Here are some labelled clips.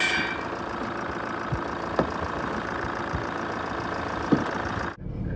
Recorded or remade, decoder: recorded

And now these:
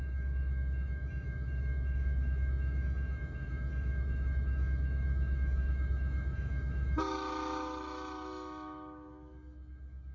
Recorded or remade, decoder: remade, autoencoder, DAC-VAE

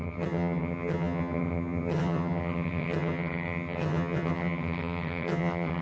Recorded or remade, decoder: remade, vocoder, HiFi-GAN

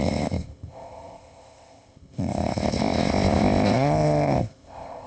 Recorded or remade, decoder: remade, codec, ZipCodec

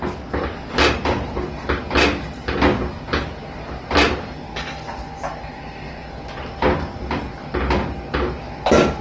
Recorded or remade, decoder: recorded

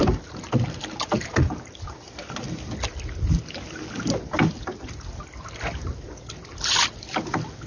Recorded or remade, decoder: recorded